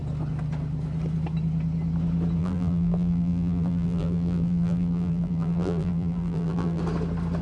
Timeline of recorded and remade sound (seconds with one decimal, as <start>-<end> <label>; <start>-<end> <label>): 0.0-2.4 recorded; 2.4-6.8 remade; 6.8-7.4 recorded

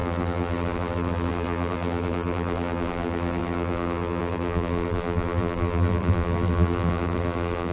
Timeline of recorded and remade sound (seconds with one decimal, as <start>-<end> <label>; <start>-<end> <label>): 0.0-7.7 remade

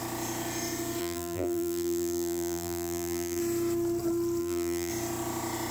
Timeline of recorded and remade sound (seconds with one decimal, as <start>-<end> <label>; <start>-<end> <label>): 0.0-1.0 recorded; 1.0-3.4 remade; 3.4-4.4 recorded; 4.4-4.9 remade; 4.9-5.7 recorded

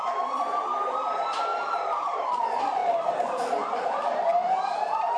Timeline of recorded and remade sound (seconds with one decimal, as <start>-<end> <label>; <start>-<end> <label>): 0.0-1.5 recorded; 1.5-2.4 remade; 2.4-5.2 recorded